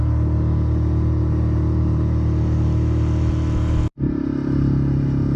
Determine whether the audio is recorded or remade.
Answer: recorded